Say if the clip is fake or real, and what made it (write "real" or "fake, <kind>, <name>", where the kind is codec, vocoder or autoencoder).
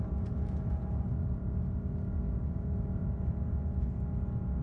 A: real